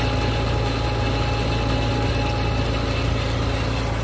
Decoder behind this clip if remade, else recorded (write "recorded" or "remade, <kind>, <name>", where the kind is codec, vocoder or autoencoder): recorded